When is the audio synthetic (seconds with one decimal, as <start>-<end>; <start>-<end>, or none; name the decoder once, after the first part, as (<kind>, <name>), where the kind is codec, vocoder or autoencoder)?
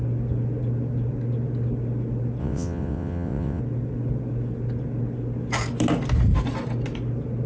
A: 2.4-3.6 (vocoder, WaveNeXt)